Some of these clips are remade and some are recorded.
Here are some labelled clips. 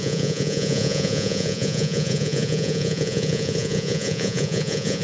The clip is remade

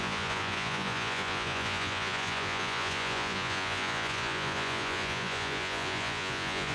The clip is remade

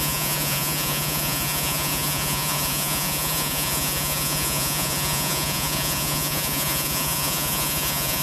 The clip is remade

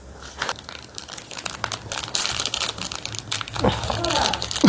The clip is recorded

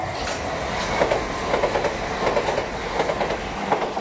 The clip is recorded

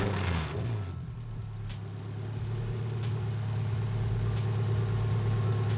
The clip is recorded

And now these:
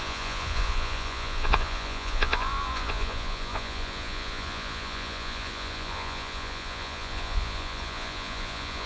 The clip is remade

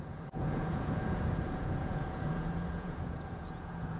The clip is remade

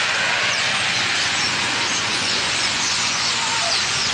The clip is remade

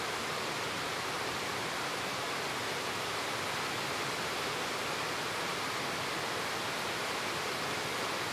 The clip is recorded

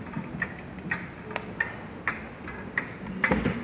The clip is recorded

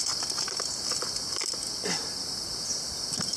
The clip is recorded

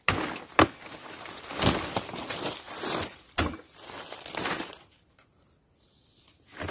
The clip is recorded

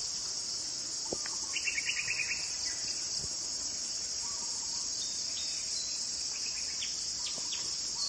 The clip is recorded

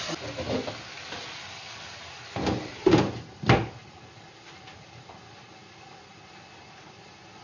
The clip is recorded